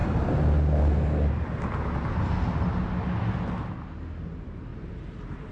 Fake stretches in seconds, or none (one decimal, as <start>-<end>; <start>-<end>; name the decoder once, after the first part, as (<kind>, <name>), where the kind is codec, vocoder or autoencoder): 4.7-5.5 (vocoder, BigVGAN v2)